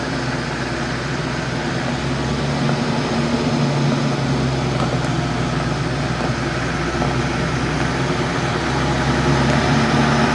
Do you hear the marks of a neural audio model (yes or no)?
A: no